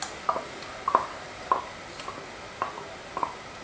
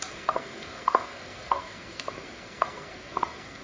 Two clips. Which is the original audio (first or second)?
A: first